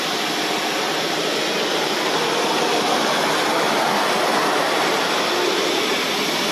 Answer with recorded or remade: recorded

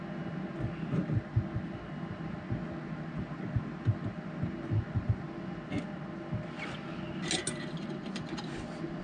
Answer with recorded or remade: recorded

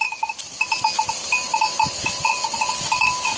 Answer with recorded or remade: recorded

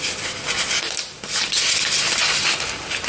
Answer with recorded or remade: recorded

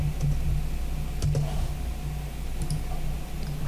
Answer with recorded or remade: recorded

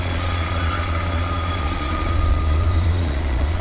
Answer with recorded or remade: remade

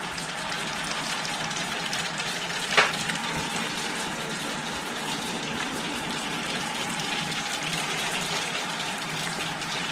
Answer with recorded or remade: remade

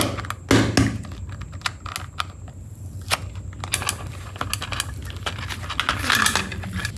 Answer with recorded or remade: recorded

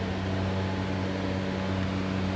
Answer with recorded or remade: recorded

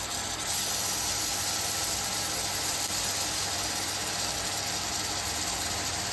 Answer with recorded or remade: recorded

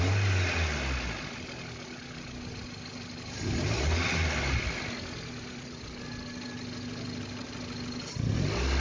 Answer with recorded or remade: recorded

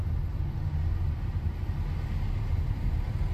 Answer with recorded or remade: recorded